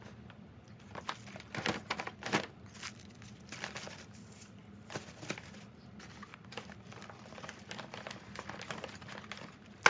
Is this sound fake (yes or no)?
no